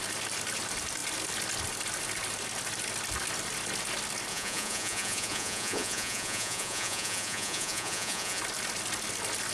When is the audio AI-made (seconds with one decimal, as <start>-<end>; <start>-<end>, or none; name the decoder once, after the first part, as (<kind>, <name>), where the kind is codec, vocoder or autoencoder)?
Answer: 4.3-8.4 (vocoder, Vocos)